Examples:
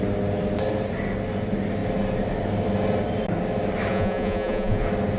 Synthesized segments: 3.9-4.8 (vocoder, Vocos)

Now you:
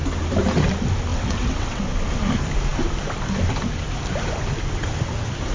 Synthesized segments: 1.1-1.8 (vocoder, WaveNeXt)

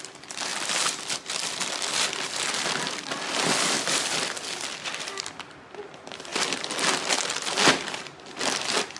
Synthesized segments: 0.0-9.0 (vocoder, BigVGAN v2)

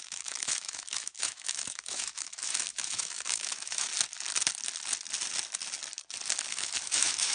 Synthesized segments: 0.0-3.9 (autoencoder, DAC-VAE); 6.5-7.3

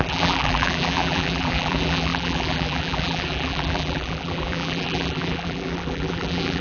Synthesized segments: 0.0-6.6 (vocoder, BigVGAN v2)

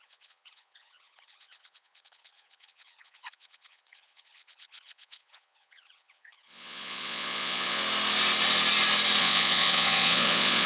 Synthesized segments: 0.0-7.8 (vocoder, Vocos); 9.2-10.7

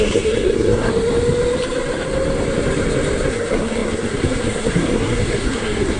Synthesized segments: 0.0-0.9 (codec, SNAC); 3.3-6.0

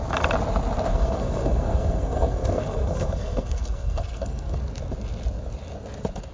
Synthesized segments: 0.9-4.6 (codec, SNAC)